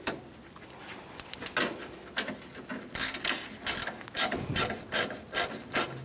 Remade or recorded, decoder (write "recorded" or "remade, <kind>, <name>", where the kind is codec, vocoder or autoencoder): recorded